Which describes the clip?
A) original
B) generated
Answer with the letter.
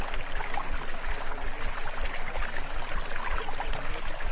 A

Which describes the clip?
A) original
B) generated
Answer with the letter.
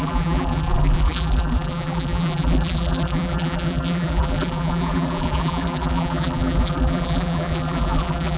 B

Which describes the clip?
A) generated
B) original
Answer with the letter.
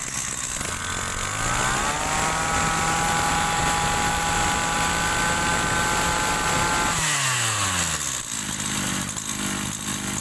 B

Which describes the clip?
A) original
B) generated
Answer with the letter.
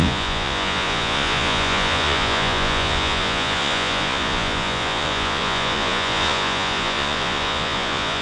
B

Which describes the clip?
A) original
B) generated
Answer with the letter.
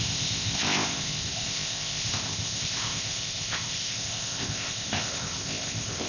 B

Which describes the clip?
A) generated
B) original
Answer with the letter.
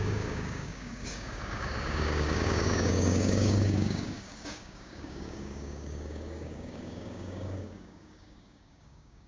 A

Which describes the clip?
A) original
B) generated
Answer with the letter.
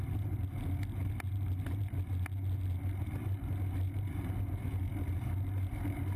A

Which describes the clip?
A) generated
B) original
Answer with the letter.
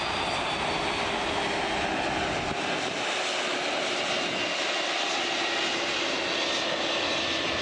B